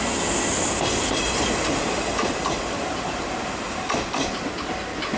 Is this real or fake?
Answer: real